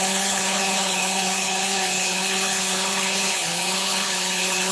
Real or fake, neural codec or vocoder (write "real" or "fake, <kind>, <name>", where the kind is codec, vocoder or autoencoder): fake, codec, HILCodec